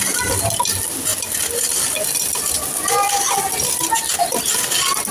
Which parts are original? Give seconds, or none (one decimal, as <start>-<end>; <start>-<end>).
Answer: 0.0-5.1